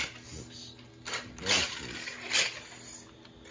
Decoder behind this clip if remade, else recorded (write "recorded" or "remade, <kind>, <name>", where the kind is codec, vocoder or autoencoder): recorded